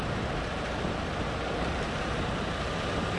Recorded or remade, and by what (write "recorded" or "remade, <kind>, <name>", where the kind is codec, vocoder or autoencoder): remade, vocoder, BigVGAN v2